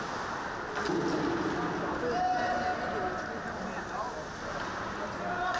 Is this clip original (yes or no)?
yes